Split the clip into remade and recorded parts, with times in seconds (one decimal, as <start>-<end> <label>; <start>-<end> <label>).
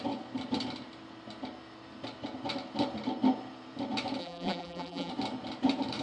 0.0-4.2 recorded; 4.2-5.1 remade; 5.1-6.0 recorded